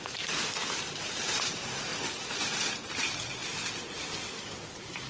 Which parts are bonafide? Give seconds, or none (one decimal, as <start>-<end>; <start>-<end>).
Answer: 1.9-3.0; 3.5-5.1